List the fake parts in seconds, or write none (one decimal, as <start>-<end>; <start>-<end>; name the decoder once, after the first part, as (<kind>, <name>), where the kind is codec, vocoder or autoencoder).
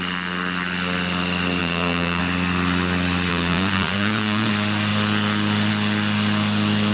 1.6-2.2 (vocoder, Vocos); 3.3-4.5